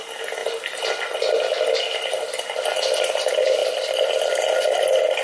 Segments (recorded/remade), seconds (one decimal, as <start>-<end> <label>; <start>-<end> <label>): 0.0-5.2 recorded